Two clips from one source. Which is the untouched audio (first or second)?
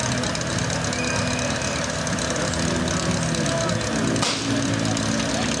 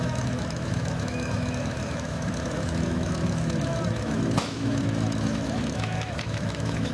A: first